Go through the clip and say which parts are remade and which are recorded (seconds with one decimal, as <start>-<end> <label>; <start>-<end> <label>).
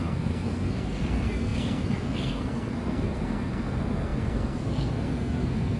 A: 0.0-5.8 remade